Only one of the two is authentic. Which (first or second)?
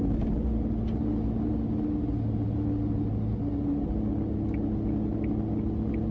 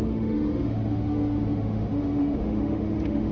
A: first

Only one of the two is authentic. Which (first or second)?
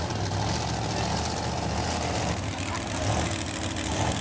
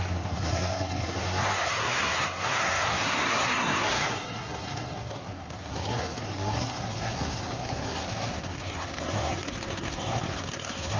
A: first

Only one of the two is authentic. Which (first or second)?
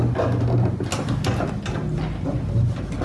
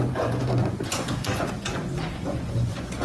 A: first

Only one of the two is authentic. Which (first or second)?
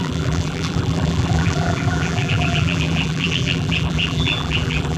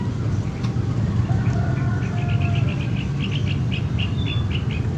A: second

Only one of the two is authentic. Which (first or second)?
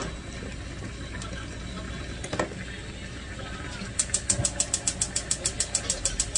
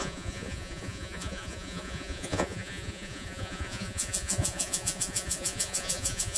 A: first